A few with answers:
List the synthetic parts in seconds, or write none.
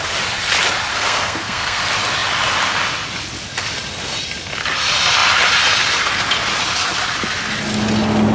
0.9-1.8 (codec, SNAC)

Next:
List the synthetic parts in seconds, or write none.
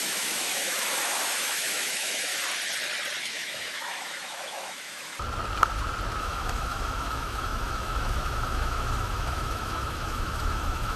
0.0-2.3 (autoencoder, DAC-VAE); 3.2-5.1; 6.2-11.0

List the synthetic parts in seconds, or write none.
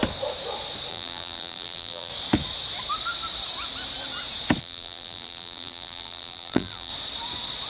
0.9-2.1 (vocoder, BigVGAN v2); 4.6-6.9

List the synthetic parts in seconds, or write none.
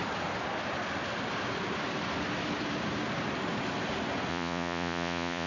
4.3-5.5 (vocoder, Vocos)